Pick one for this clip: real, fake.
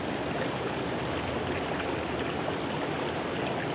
real